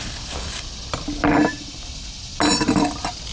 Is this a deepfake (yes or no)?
no